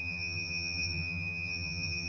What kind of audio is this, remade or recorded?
remade